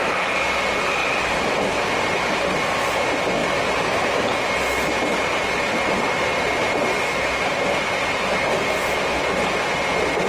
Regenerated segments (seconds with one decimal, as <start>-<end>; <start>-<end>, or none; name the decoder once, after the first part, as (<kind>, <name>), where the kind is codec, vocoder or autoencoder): 1.0-2.6 (vocoder, BigVGAN v2); 3.4-8.5